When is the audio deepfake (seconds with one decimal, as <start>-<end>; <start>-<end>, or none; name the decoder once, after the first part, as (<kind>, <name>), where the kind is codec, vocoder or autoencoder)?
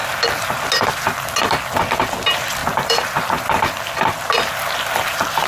2.6-3.8 (vocoder, BigVGAN v2)